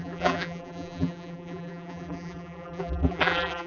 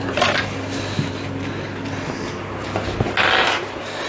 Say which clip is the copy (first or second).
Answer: first